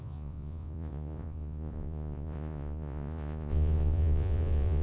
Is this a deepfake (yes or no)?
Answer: yes